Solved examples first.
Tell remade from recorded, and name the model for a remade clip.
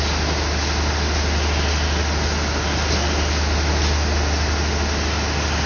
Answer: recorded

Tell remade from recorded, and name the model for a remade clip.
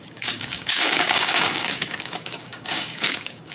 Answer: remade, codec, DAC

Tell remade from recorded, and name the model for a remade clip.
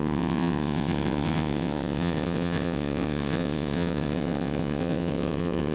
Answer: remade, vocoder, WaveNeXt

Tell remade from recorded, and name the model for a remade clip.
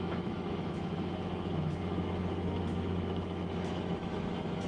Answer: remade, autoencoder, DAC-VAE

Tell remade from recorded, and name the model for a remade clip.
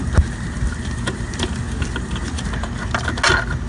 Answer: recorded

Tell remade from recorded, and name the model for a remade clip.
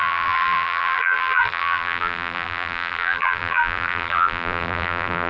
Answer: remade, vocoder, BigVGAN v2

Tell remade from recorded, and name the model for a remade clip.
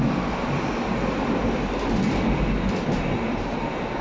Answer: recorded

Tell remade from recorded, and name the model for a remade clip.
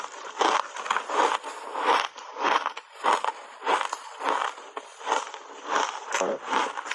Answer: recorded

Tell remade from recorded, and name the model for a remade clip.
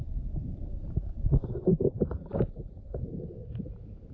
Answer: remade, vocoder, BigVGAN v2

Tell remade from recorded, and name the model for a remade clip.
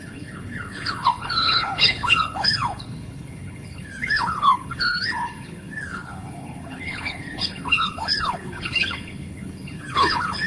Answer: remade, codec, HILCodec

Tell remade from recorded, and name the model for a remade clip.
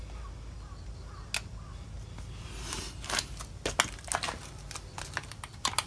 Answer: recorded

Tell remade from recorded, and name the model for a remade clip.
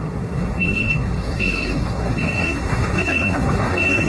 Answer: remade, codec, SNAC